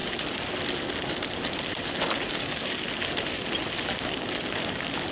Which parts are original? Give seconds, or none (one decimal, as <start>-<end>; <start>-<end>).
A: 0.0-5.1

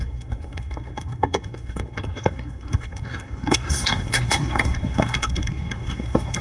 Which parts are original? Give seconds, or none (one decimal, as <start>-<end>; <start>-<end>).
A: none

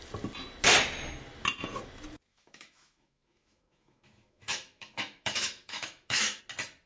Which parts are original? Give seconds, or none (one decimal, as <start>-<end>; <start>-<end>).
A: 0.0-2.3; 6.4-6.9

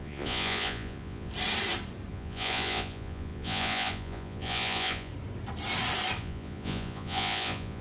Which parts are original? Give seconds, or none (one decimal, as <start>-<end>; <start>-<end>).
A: 1.3-2.1; 5.1-6.2

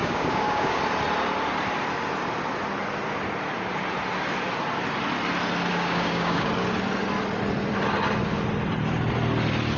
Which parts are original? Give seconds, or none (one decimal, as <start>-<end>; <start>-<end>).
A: 0.8-5.7; 6.5-9.8